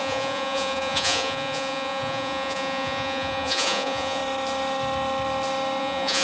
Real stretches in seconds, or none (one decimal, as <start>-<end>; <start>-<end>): 4.2-5.8